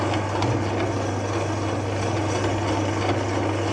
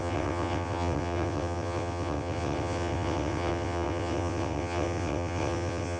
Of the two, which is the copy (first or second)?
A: second